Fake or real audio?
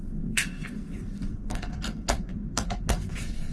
fake